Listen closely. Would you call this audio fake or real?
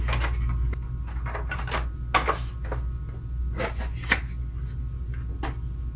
real